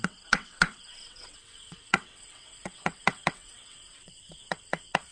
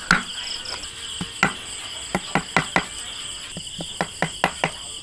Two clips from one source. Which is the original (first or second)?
second